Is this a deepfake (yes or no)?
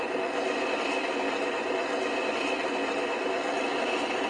no